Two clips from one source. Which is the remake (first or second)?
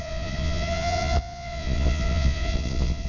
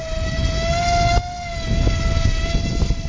first